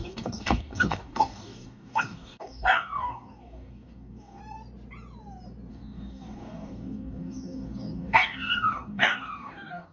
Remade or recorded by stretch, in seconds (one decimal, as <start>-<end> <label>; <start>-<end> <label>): 0.0-4.4 remade; 4.4-5.7 recorded; 5.7-9.9 remade